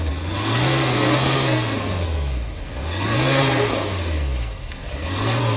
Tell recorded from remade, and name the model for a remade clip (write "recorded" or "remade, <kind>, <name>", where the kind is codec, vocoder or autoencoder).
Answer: remade, codec, SNAC